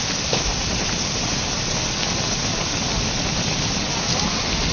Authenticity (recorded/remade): recorded